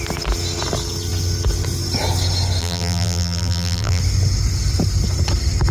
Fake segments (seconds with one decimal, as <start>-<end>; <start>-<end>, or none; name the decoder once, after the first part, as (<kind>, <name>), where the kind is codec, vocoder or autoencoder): 2.6-4.0 (vocoder, BigVGAN v2)